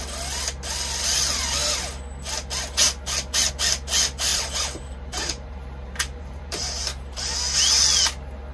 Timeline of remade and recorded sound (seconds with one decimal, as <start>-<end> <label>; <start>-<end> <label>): 0.0-4.3 recorded; 4.3-7.2 remade; 7.2-8.5 recorded